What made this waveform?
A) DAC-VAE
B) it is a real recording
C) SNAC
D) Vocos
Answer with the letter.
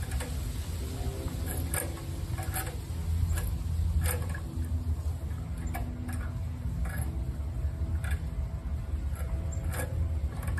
B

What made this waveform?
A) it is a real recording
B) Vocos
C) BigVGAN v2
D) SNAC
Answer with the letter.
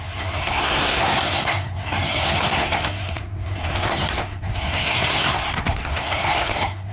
D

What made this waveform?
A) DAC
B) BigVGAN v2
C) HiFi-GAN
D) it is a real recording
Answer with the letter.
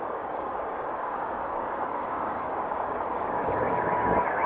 A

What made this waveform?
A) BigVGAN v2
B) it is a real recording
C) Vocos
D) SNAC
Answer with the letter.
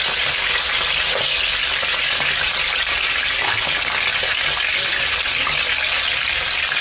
B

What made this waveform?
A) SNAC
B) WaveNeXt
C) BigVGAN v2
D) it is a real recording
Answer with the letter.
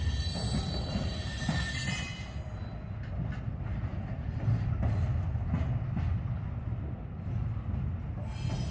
D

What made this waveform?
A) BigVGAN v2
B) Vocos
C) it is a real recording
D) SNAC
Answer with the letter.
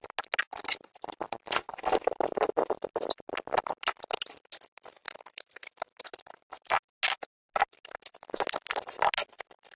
C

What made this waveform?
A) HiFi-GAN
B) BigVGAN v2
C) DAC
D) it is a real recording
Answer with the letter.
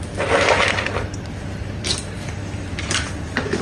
B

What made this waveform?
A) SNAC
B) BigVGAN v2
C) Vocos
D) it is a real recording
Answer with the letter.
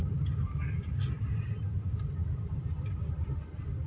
D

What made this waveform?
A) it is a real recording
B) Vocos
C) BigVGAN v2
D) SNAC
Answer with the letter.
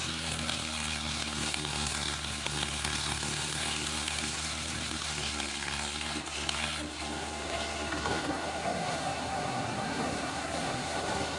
D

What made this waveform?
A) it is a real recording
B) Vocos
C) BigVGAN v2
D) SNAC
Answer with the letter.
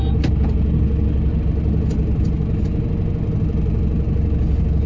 A